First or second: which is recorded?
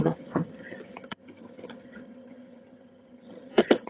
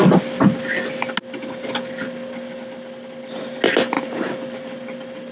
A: second